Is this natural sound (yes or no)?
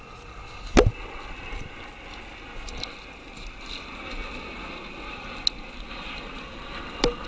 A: yes